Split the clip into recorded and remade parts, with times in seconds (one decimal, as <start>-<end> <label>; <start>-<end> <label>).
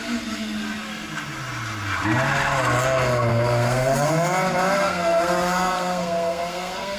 0.0-3.3 recorded; 3.3-4.1 remade; 4.1-4.8 recorded; 4.8-7.0 remade